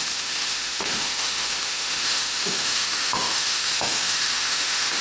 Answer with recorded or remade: remade